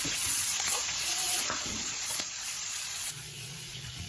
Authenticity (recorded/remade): remade